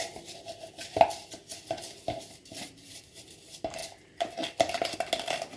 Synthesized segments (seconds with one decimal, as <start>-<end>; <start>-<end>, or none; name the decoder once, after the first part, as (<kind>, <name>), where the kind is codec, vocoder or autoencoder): 2.5-3.2 (vocoder, BigVGAN v2)